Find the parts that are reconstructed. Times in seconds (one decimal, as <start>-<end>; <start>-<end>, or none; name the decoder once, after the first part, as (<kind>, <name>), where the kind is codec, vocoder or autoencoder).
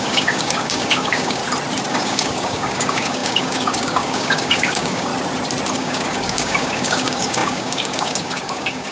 0.0-1.4 (codec, DAC); 1.9-5.1; 5.7-8.9